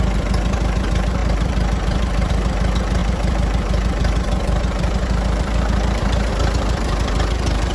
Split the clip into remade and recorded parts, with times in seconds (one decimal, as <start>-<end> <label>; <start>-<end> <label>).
0.0-1.2 recorded; 1.2-2.3 remade; 2.3-3.0 recorded; 3.0-6.3 remade; 6.3-7.7 recorded